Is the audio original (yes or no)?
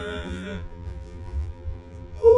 no